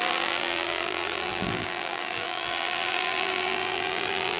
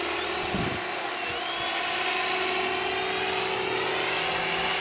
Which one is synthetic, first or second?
first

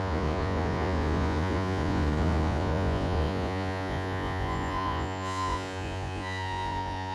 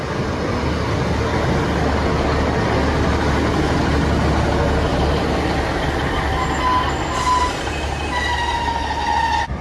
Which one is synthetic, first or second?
first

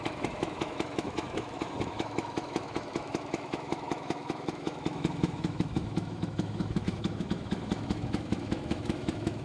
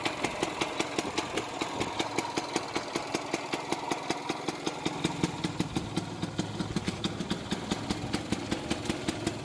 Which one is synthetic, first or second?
first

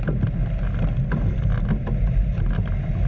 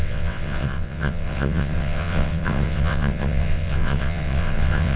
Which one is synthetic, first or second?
second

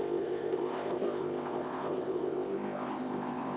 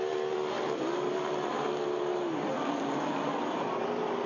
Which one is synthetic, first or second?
first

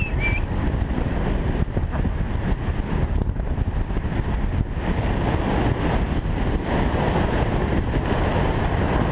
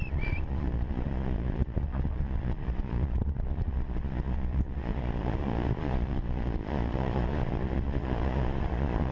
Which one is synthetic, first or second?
second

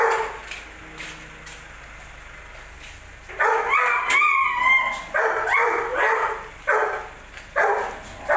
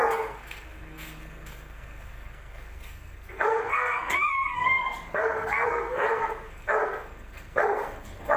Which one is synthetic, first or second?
second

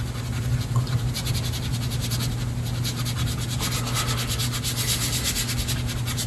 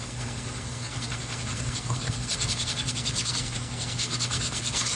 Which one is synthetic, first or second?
second